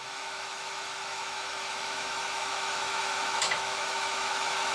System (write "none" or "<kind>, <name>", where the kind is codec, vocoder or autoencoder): autoencoder, DAC-VAE